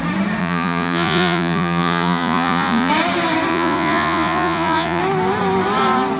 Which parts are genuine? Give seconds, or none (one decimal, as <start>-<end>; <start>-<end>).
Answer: 0.0-0.4; 2.9-3.5; 5.0-6.2